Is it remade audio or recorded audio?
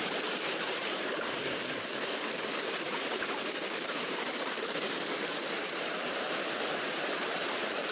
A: remade